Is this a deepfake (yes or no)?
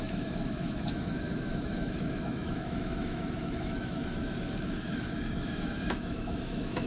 yes